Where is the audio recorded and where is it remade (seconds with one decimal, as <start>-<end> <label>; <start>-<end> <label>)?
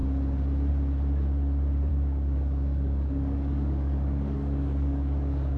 0.0-1.9 recorded; 1.9-5.6 remade